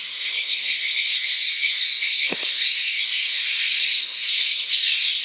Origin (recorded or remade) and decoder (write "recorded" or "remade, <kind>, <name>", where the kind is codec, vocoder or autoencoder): remade, codec, SNAC